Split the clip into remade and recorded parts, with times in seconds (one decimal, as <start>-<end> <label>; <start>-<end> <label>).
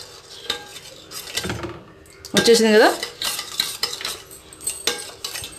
0.0-5.6 recorded